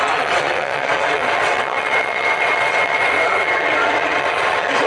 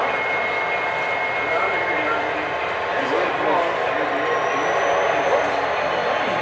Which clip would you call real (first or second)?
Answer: second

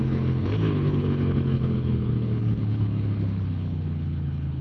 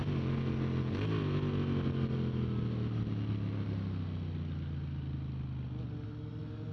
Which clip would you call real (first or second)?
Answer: second